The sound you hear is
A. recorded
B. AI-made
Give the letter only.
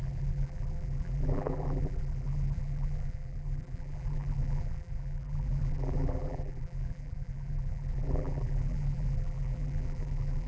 B